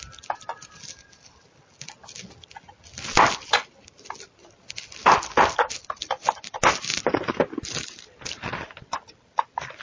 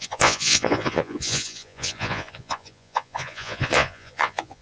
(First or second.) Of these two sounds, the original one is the first